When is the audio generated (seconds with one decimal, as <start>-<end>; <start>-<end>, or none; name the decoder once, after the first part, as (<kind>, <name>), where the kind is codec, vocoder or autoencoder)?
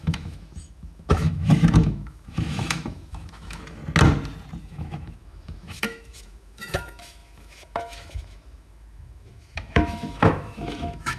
0.0-3.8 (autoencoder, DAC-VAE); 4.6-11.2